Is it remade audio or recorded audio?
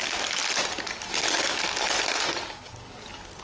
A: recorded